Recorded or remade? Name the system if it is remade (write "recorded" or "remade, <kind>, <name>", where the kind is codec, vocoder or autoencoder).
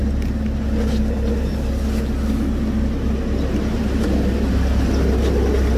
recorded